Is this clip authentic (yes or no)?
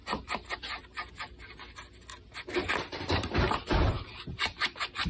yes